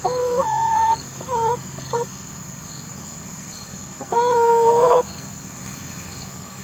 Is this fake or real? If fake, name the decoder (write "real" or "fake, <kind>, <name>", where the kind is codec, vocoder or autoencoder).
fake, codec, SNAC